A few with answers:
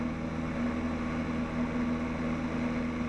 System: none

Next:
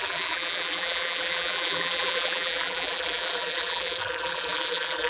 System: vocoder, BigVGAN v2